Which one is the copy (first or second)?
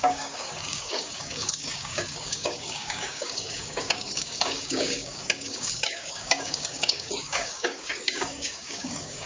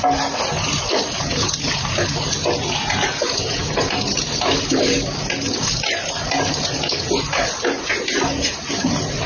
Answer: first